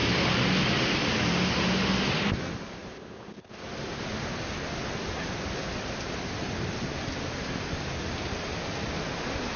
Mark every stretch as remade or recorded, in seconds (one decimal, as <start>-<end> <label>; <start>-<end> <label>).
0.0-9.6 recorded